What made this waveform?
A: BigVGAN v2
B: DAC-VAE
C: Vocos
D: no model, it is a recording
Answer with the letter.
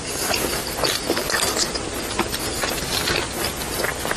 D